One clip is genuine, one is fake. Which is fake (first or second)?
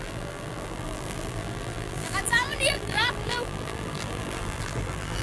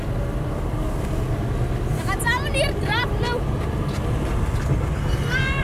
first